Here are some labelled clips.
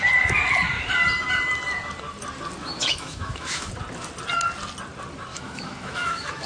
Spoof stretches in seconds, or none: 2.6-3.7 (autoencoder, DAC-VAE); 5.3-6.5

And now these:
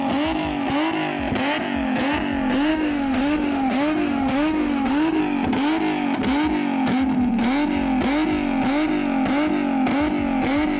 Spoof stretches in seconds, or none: 2.7-5.2 (autoencoder, DAC-VAE)